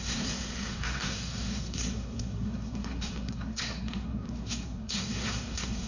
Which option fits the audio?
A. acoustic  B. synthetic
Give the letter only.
B